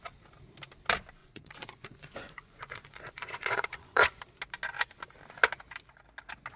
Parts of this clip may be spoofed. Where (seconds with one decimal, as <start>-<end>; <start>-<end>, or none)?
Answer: 1.2-4.2